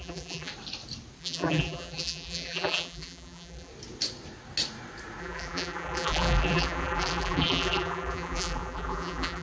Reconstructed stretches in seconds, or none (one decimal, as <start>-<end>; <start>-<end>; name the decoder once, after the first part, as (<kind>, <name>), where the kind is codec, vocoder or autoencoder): 0.0-0.5 (vocoder, BigVGAN v2); 1.2-3.7; 5.2-9.4